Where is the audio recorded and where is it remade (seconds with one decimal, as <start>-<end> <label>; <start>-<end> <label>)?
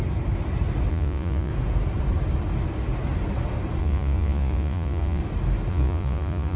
0.0-0.9 recorded; 0.9-1.5 remade; 1.5-3.8 recorded; 3.8-5.2 remade; 5.2-5.7 recorded; 5.7-6.6 remade